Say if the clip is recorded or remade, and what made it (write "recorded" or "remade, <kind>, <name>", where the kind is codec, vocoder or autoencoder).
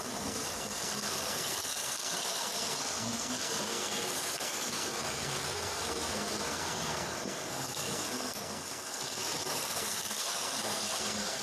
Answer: remade, codec, SNAC